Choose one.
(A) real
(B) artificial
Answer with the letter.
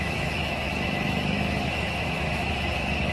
B